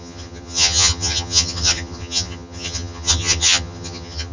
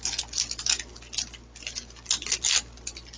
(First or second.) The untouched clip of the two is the second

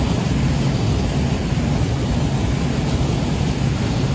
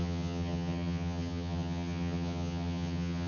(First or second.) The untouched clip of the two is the first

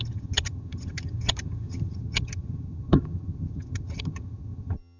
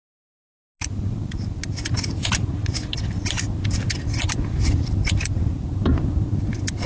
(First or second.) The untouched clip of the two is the second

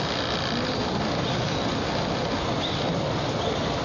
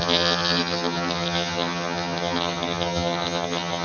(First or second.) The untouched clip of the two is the first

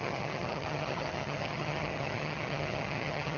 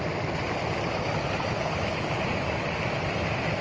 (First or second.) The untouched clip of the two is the second